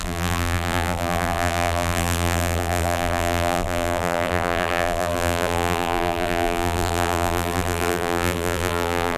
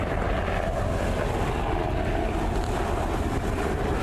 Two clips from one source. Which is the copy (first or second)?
first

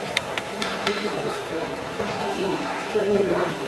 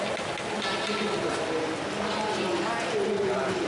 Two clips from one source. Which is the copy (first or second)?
first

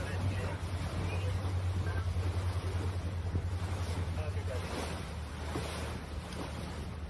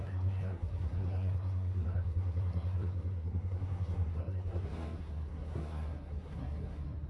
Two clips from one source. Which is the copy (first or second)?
second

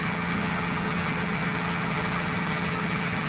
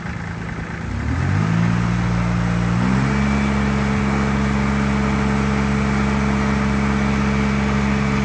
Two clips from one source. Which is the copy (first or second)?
first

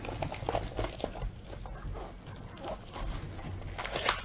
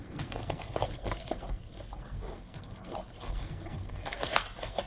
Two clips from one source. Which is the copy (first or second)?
second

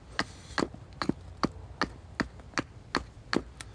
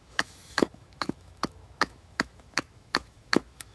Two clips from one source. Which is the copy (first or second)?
second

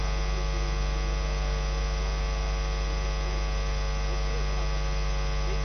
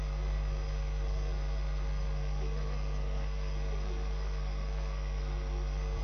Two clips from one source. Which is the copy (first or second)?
second